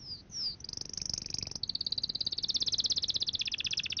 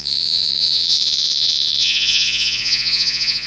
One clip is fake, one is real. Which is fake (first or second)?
second